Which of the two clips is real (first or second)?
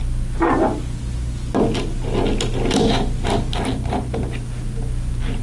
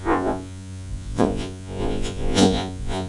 first